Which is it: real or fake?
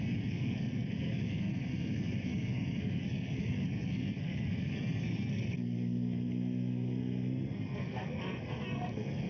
fake